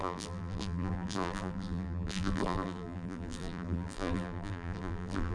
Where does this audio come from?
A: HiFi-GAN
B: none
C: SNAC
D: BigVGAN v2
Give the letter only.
D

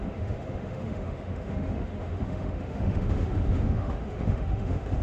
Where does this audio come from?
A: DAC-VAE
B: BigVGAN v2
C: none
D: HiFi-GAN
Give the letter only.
A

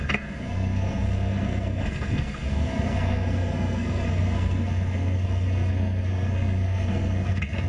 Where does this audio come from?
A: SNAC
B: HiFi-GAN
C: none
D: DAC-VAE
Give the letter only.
A